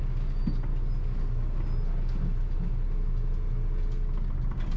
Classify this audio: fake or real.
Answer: real